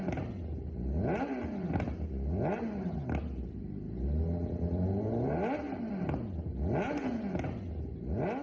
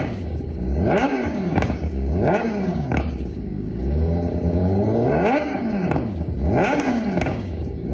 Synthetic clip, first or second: second